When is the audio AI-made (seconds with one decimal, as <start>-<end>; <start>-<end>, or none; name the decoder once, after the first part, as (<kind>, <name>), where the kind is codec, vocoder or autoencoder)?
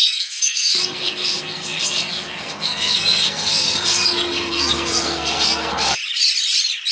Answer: 0.0-6.0 (codec, SNAC)